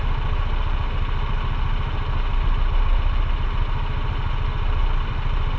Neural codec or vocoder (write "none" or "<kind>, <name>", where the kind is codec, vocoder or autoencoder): none